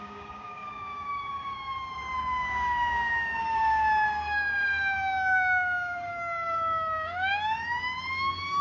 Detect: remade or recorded remade